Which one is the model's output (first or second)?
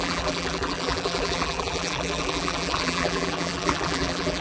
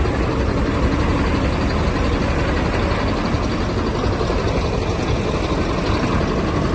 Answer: first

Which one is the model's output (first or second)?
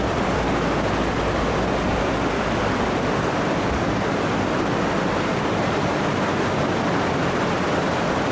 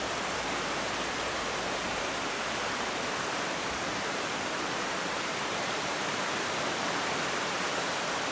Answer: second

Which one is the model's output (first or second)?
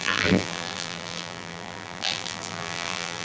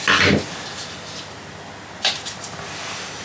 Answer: first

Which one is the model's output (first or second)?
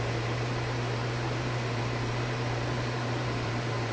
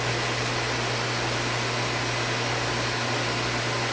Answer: first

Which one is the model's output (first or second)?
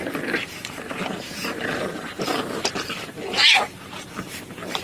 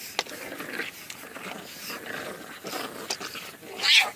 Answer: first